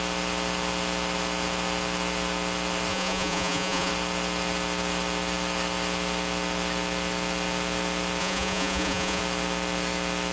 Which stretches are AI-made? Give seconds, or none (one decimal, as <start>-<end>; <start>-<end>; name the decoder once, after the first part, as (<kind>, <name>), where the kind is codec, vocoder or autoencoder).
2.9-3.9 (vocoder, Vocos); 8.2-9.2

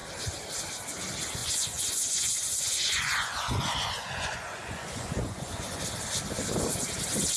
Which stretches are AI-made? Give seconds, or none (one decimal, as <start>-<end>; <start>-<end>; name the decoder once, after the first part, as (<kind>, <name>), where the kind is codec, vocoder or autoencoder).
1.4-5.8 (vocoder, Vocos)

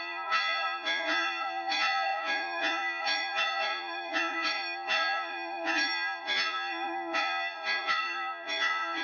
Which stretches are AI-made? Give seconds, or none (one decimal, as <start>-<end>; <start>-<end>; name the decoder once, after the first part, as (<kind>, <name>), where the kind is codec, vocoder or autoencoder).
0.0-9.0 (vocoder, Vocos)

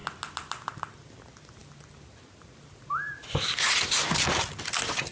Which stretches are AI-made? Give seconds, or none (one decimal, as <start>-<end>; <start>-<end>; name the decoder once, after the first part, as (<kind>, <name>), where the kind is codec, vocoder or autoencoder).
none

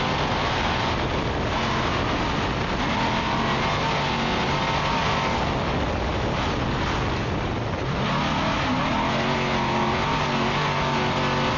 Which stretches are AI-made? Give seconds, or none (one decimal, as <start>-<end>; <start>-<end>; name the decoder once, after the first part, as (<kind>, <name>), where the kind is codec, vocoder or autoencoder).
none

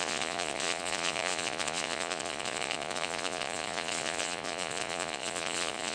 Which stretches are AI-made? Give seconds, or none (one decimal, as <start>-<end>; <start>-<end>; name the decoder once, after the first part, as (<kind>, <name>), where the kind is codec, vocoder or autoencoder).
0.0-5.9 (vocoder, Vocos)